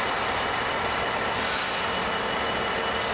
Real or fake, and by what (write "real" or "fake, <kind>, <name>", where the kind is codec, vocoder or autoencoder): real